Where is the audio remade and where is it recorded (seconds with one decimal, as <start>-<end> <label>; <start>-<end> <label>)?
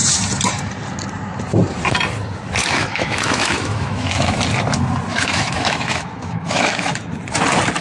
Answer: 0.0-2.6 recorded; 2.6-4.4 remade; 4.4-5.1 recorded; 5.1-6.9 remade; 6.9-7.8 recorded